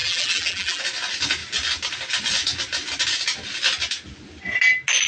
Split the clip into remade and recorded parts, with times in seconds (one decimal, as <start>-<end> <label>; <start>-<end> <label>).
0.0-0.8 remade; 0.8-5.1 recorded